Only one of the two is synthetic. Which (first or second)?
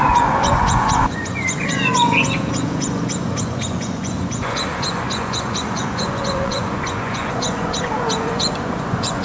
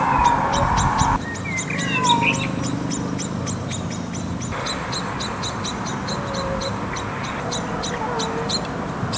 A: first